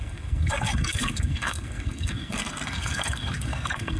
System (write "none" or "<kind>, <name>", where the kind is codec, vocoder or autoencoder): codec, SNAC